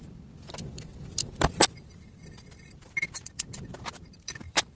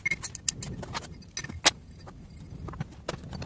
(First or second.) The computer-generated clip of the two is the first